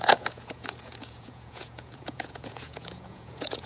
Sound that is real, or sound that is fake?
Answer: fake